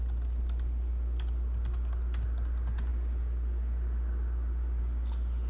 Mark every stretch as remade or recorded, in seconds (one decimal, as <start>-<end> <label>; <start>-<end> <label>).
0.0-5.5 recorded